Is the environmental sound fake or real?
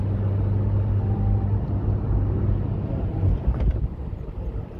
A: real